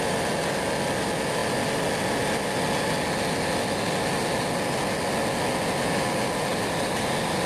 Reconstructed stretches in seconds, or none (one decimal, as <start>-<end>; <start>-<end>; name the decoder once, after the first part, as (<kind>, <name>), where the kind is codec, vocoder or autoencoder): none